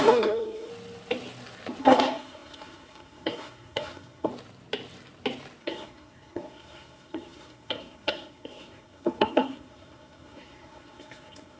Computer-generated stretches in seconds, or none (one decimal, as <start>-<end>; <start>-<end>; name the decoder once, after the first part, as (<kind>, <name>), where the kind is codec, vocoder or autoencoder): 0.0-0.7 (codec, SNAC); 1.8-4.3; 5.6-11.6